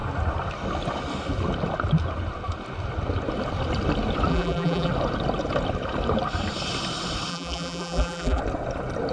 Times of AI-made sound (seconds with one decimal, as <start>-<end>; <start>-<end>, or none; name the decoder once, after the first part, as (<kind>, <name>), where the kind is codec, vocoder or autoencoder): 4.3-4.9 (vocoder, BigVGAN v2); 7.3-8.4